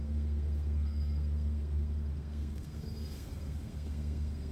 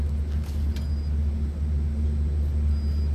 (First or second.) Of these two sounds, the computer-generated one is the first